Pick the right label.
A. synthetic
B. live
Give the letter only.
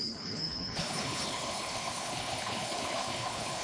A